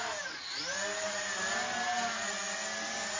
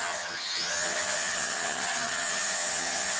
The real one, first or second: first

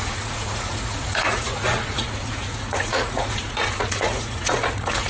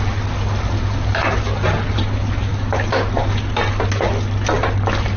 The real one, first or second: second